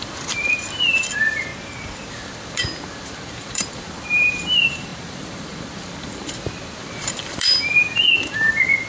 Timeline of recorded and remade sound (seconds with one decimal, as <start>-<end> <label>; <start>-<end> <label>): 0.0-1.5 remade; 1.5-2.1 recorded; 2.1-8.9 remade